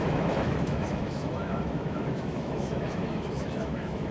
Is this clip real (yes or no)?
no